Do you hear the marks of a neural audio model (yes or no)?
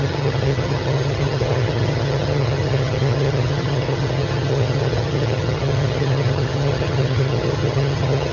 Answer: yes